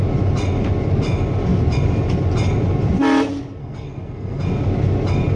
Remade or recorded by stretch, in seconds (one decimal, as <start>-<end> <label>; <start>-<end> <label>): 0.0-3.6 recorded; 3.6-4.4 remade; 4.4-5.4 recorded